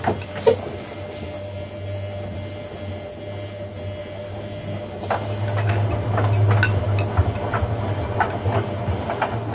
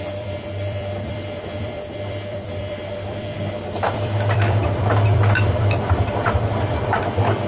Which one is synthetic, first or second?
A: second